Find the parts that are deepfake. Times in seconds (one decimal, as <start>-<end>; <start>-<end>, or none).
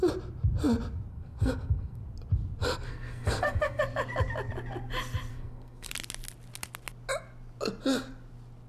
1.1-2.0; 2.6-3.8; 5.3-5.9